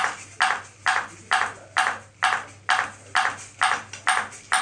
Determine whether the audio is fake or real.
real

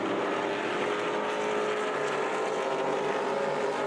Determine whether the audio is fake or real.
real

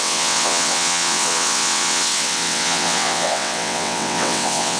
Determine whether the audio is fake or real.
fake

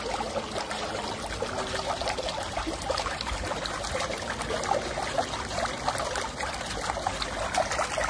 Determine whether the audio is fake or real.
real